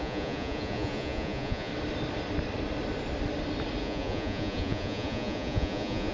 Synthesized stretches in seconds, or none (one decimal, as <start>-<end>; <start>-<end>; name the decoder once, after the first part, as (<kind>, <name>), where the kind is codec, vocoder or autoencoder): 0.0-1.7 (vocoder, Vocos); 3.8-6.1